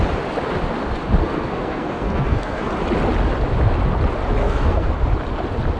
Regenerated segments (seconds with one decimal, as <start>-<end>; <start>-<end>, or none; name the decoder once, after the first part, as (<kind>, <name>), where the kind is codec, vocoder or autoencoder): 1.2-2.7 (codec, SNAC); 4.4-4.9